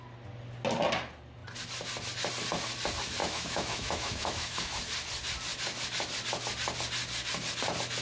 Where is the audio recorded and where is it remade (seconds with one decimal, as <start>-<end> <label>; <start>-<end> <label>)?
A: 0.0-3.2 recorded; 3.2-4.8 remade; 4.8-8.0 recorded